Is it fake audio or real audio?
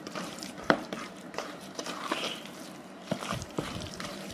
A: fake